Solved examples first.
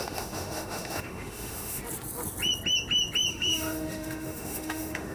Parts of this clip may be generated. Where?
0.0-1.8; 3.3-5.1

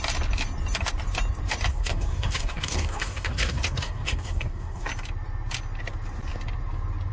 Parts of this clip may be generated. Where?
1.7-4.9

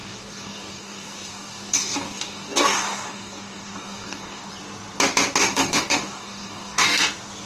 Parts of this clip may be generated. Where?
0.0-4.5; 5.4-7.0

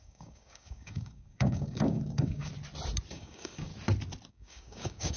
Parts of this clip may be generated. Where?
0.0-2.5; 3.1-3.7; 4.3-5.2

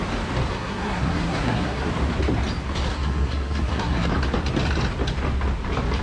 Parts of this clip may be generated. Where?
0.5-1.9; 2.9-4.1

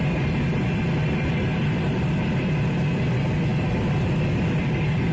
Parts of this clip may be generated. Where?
3.5-5.1